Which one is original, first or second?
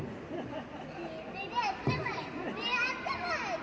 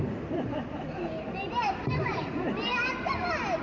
first